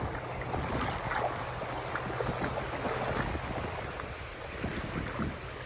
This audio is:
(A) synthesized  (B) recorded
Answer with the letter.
B